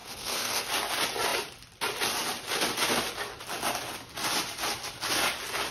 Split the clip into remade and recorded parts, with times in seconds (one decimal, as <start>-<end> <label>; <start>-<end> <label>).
0.0-0.7 remade; 0.7-5.7 recorded